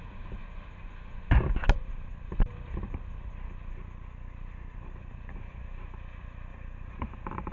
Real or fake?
real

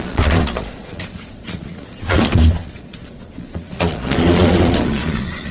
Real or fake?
fake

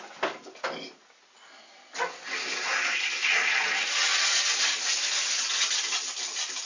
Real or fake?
real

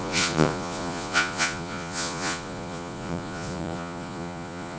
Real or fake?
fake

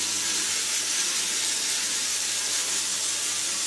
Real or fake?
real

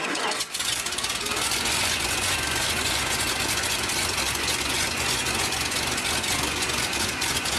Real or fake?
fake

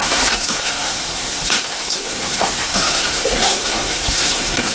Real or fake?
fake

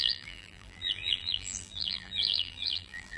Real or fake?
fake